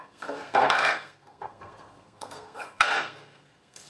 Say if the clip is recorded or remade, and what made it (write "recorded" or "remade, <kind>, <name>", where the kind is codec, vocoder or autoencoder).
remade, codec, SNAC